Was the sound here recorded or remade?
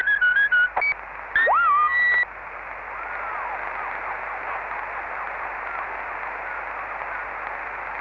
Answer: recorded